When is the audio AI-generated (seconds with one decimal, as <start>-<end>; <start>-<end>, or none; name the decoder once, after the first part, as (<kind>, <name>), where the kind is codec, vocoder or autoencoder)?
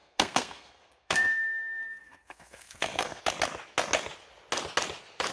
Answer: 0.0-3.2 (codec, SNAC)